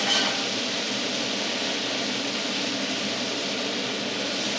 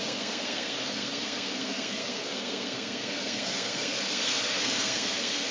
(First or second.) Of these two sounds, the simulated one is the second